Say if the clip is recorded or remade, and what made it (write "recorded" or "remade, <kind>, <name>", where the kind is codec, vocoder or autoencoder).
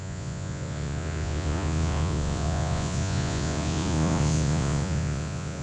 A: remade, vocoder, Vocos